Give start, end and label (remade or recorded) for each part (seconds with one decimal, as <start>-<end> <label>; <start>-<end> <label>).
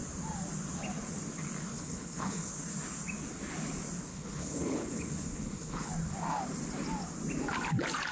0.0-1.7 recorded; 1.7-2.5 remade; 2.5-4.1 recorded; 4.1-5.9 remade; 5.9-8.1 recorded